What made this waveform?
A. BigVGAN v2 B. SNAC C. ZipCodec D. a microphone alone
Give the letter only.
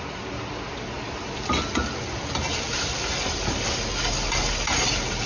D